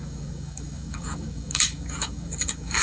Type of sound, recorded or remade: remade